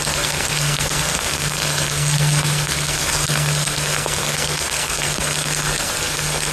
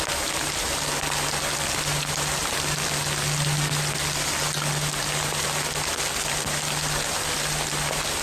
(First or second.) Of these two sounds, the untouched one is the second